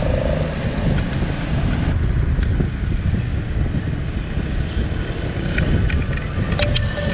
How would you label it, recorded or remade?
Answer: recorded